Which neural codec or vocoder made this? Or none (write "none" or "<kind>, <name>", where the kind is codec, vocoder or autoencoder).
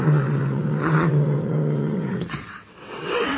vocoder, WaveNeXt